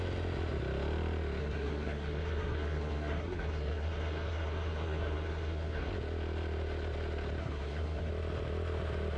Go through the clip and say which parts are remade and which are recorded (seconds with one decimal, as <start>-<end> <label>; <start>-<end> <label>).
0.0-1.4 recorded; 1.4-5.9 remade; 5.9-7.4 recorded; 7.4-8.1 remade; 8.1-9.2 recorded